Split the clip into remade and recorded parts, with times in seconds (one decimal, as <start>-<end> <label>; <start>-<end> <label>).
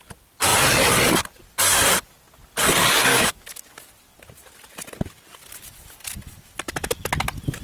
0.0-3.1 recorded; 3.1-3.6 remade; 3.6-7.6 recorded